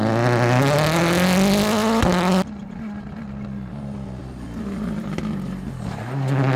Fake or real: real